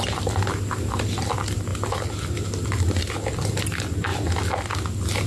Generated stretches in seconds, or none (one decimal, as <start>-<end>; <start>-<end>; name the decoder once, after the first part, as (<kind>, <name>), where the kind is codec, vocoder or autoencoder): none